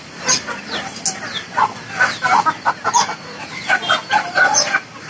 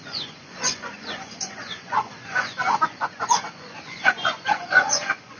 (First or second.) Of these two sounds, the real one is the first